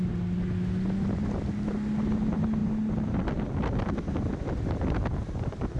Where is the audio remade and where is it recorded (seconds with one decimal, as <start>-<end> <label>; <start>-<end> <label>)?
0.0-5.8 recorded